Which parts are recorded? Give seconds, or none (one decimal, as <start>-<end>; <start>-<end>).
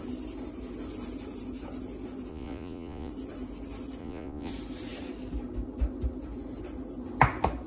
0.0-2.3; 3.1-4.0; 4.5-7.7